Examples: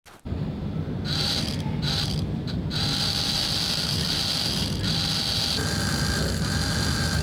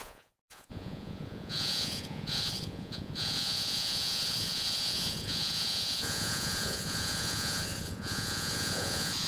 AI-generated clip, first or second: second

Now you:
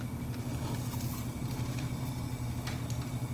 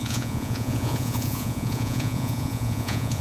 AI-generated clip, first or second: second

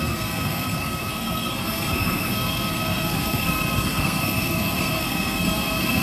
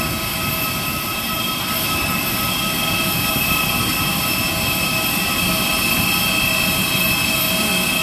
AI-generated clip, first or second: first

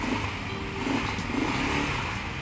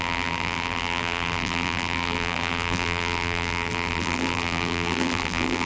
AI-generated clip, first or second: second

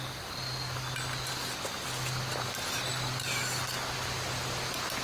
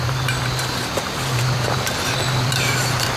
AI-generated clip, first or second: second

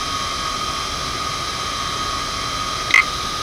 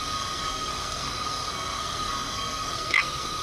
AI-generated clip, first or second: second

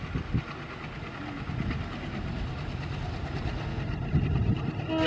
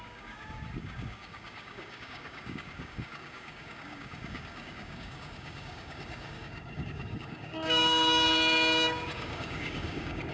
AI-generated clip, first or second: second